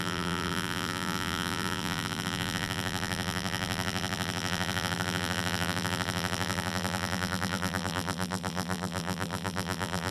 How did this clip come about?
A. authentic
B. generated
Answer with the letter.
B